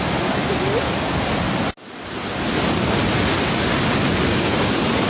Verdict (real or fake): real